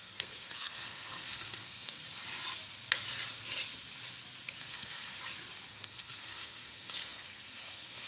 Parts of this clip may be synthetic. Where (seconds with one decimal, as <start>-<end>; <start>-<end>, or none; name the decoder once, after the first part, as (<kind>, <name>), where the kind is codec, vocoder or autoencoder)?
0.0-2.0 (codec, SNAC); 4.6-5.1; 5.7-8.1

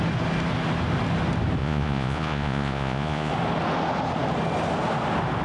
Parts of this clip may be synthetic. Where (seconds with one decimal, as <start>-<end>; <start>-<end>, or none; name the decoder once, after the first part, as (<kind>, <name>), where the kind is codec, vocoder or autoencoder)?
1.6-3.3 (vocoder, Vocos)

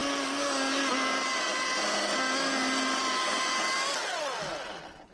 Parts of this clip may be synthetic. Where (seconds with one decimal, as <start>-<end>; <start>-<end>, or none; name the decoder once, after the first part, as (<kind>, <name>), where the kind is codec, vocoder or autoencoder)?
none

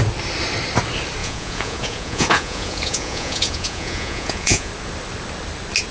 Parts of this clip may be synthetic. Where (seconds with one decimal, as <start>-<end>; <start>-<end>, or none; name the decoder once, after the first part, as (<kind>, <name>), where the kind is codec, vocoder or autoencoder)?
1.2-4.7 (vocoder, Vocos)

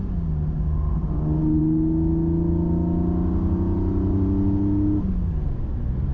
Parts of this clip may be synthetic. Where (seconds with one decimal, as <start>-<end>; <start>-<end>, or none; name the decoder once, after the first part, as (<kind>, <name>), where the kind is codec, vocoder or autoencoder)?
none

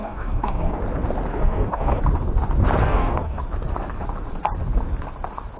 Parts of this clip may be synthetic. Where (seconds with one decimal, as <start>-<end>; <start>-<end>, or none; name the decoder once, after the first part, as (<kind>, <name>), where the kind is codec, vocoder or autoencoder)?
0.0-0.8 (codec, DAC); 1.3-2.0; 2.8-3.4